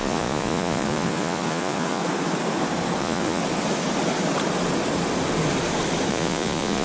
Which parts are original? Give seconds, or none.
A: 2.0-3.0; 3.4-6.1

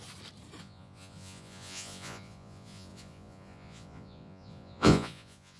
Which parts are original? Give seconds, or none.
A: 0.0-0.6

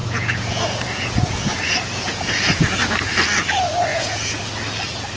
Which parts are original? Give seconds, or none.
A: 3.1-3.9; 4.4-5.2